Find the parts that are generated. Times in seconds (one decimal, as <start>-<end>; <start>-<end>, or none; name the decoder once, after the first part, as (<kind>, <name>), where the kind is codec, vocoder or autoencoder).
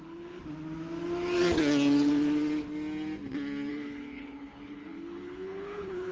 0.0-0.4 (codec, HILCodec); 3.7-6.1